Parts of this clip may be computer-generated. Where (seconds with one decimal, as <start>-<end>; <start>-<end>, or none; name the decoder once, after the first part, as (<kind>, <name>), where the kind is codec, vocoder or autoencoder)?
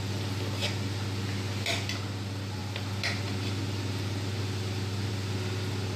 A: none